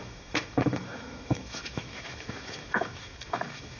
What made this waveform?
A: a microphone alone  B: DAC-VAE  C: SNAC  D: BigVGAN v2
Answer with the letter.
B